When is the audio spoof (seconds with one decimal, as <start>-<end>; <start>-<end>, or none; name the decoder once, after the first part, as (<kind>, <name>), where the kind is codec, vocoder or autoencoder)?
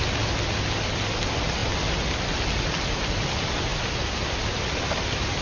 none